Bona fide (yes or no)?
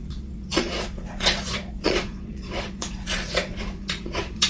no